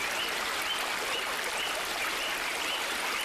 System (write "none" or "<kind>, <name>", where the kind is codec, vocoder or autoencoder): none